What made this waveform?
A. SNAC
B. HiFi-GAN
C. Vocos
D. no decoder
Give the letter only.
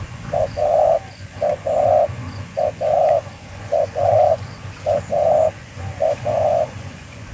C